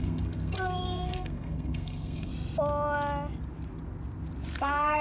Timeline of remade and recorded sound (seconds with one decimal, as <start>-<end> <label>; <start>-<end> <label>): 0.0-2.3 remade; 2.3-4.6 recorded; 4.6-5.0 remade